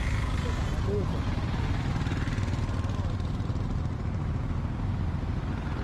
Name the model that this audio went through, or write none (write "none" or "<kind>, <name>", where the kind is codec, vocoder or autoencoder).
none